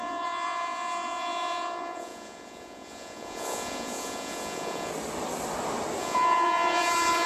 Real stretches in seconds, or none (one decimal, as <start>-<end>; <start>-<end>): 4.9-6.0